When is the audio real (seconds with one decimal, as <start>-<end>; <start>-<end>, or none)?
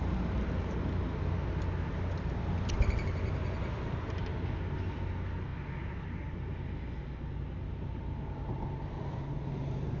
0.0-10.0